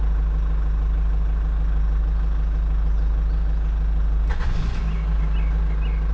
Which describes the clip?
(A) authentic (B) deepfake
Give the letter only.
A